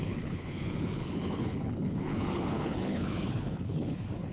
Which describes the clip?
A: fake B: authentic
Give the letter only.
A